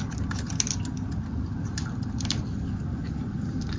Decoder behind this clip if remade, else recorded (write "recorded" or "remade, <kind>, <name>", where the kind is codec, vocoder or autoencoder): recorded